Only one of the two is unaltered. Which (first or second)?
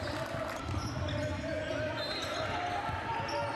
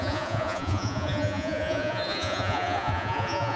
first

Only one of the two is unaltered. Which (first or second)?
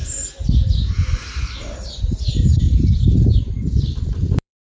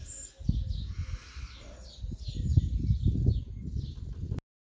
second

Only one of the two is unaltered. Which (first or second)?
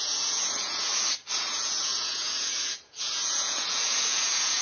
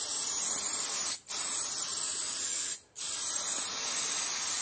second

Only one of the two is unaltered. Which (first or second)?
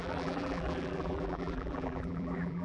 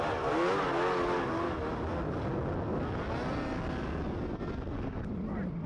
second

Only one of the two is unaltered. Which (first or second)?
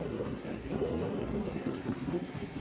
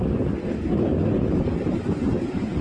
second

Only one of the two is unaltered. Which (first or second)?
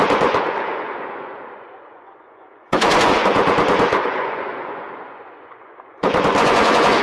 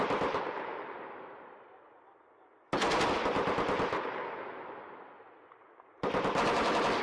second